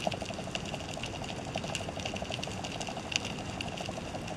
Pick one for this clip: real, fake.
real